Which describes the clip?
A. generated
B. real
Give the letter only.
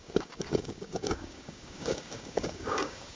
A